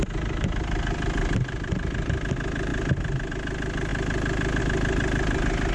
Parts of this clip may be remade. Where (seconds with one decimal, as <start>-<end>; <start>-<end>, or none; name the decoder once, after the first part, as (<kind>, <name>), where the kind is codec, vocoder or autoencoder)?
none